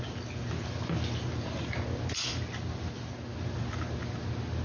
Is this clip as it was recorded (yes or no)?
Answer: yes